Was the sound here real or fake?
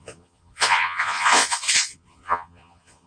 fake